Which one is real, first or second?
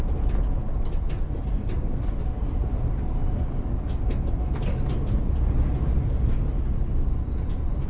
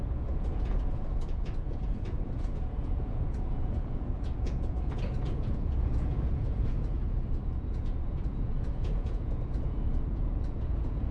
first